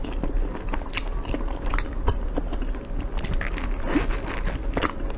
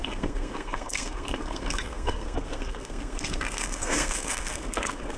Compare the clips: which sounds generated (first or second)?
second